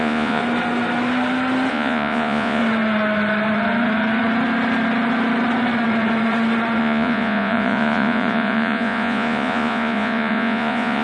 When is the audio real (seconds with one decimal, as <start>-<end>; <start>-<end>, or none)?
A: 0.4-1.7; 2.6-6.8